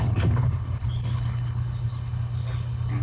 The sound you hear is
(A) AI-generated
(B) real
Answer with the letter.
A